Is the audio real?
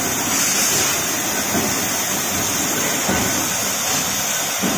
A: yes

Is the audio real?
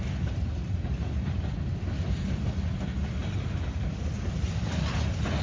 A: yes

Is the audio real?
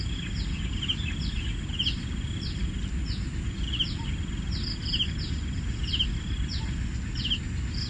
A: yes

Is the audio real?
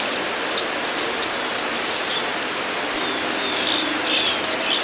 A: yes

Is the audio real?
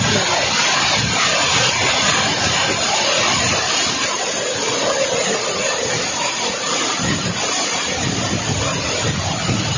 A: yes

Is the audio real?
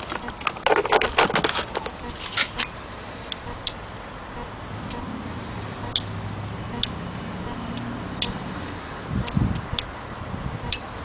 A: yes